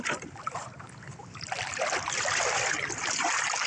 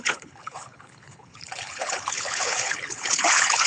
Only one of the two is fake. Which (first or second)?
second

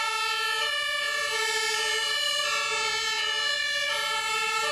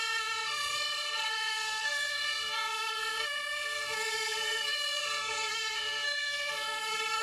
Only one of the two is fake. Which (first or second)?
second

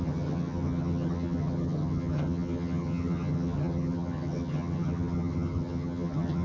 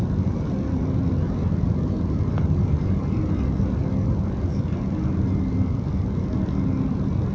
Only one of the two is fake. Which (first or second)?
first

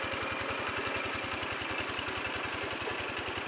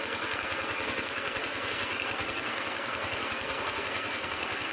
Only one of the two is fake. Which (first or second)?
second